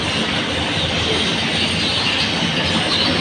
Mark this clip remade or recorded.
recorded